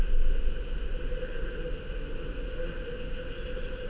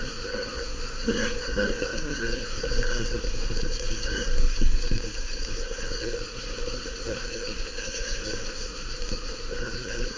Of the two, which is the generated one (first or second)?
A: second